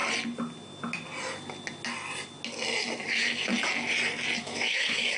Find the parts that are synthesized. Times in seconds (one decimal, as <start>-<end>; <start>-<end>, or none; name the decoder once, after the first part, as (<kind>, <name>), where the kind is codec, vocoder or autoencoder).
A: 3.1-3.5 (autoencoder, DAC-VAE); 4.4-5.2